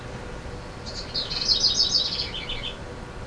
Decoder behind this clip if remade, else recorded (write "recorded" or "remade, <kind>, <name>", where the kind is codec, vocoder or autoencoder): recorded